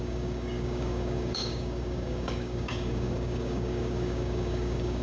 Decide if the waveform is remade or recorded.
remade